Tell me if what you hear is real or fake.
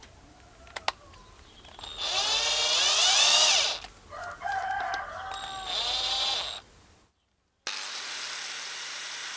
real